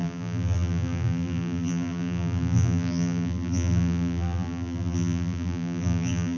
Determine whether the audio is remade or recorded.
remade